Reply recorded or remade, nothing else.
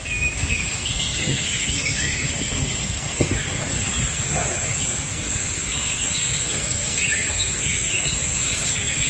remade